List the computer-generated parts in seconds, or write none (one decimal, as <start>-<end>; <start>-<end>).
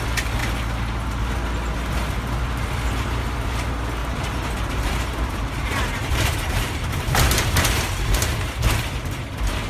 4.0-9.0